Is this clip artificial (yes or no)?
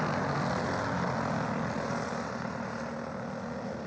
no